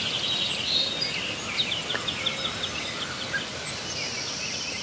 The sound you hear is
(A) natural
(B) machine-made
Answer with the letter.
A